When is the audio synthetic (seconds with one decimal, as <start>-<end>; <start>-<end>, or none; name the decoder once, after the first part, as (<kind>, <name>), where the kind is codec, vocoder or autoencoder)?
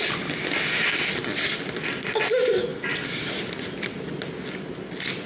none